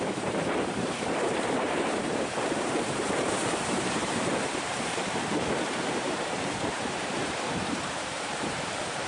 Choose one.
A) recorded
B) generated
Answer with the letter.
B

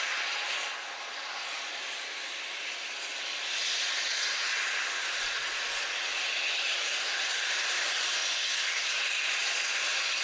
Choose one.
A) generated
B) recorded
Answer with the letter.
B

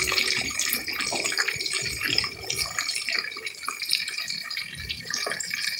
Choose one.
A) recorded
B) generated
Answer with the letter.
B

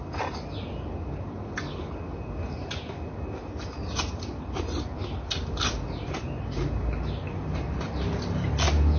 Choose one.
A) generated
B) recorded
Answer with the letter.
B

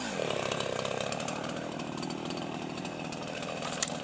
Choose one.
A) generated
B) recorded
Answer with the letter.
A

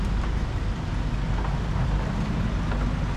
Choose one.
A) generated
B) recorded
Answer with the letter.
B